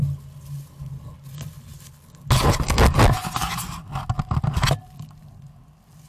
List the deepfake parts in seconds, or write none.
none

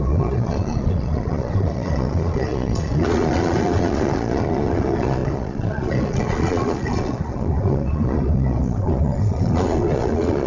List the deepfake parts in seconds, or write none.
0.0-10.5 (vocoder, Vocos)

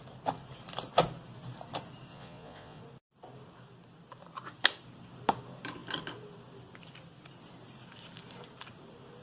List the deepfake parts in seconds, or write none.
2.1-2.8 (vocoder, Vocos)

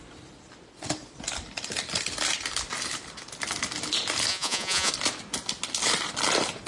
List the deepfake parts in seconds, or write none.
4.3-4.9 (vocoder, Vocos)

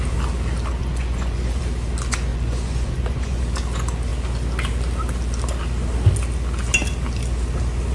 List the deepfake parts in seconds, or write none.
0.8-1.6 (vocoder, Vocos); 2.3-3.4